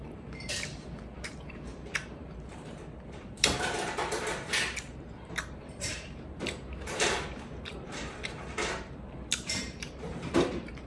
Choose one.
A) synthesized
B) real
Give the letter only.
A